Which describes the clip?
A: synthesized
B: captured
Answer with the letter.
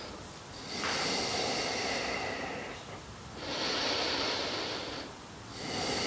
B